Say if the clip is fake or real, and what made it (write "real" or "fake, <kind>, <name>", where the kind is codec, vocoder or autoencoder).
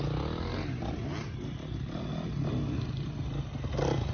real